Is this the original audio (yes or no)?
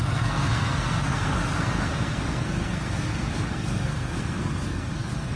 no